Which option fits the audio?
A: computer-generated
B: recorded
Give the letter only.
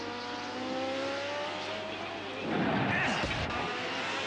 B